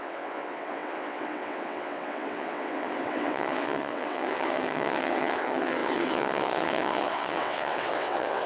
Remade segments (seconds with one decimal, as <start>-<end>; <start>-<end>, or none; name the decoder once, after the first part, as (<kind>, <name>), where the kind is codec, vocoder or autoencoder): 0.0-8.5 (vocoder, WaveNeXt)

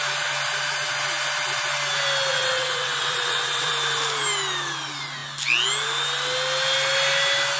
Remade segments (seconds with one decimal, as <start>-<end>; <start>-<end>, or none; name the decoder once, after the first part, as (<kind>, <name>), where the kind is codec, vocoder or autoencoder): 2.3-3.7 (vocoder, WaveNeXt)

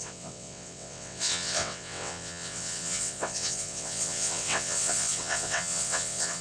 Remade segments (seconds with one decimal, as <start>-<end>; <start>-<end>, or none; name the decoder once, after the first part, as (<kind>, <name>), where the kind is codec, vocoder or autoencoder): 0.0-6.4 (vocoder, WaveNeXt)

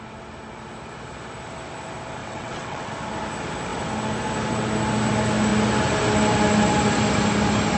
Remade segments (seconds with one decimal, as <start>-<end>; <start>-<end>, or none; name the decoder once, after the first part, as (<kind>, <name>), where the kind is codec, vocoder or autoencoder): 2.2-2.9 (vocoder, WaveNeXt)

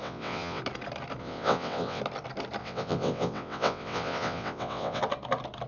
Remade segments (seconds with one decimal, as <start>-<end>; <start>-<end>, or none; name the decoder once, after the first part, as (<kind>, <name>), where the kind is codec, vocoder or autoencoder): 0.0-0.6 (vocoder, WaveNeXt); 1.2-2.0; 2.6-5.0

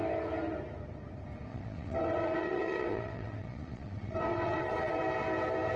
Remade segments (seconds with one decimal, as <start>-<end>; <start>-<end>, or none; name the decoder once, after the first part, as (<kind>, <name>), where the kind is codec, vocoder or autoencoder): 1.5-5.0 (vocoder, WaveNeXt)